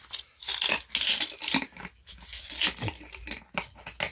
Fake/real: real